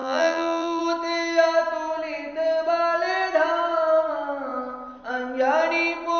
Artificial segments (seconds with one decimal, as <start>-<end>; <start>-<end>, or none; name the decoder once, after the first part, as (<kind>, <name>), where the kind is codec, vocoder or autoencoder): 0.0-0.8 (vocoder, BigVGAN v2)